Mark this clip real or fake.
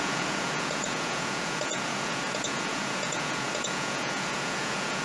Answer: fake